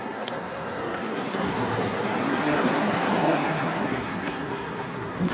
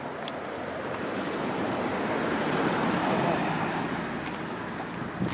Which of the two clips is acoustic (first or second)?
second